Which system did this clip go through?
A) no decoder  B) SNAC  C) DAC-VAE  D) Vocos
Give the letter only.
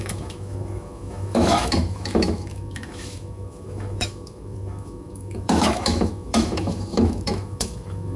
C